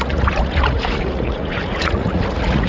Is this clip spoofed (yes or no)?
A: yes